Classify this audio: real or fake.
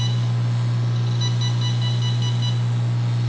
real